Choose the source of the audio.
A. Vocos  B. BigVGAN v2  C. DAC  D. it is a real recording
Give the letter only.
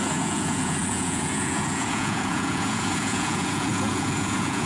A